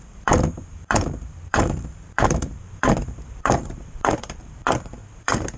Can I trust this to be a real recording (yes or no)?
no